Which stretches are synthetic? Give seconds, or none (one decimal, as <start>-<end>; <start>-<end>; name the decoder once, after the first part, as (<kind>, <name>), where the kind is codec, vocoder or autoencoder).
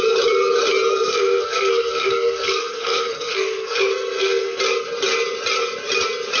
0.9-4.6 (codec, SNAC)